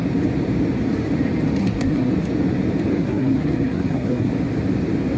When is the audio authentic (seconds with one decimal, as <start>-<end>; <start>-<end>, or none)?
0.0-1.6; 2.1-2.9; 4.3-5.2